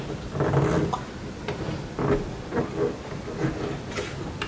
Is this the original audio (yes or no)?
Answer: yes